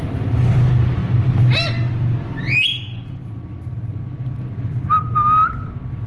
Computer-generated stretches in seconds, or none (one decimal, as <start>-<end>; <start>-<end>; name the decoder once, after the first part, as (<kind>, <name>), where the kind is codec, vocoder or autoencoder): none